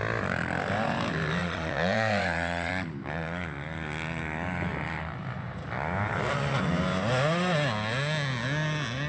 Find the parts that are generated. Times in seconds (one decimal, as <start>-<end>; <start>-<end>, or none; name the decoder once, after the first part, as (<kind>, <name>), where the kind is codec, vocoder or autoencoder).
1.4-2.7 (vocoder, Vocos)